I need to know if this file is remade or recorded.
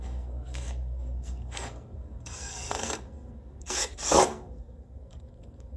remade